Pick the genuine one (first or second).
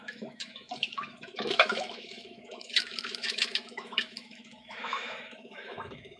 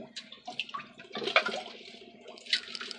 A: second